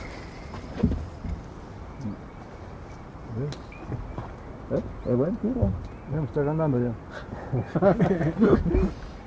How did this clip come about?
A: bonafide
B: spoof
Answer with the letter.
A